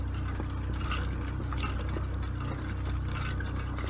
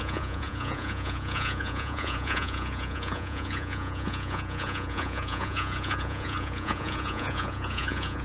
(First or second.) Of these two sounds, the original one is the first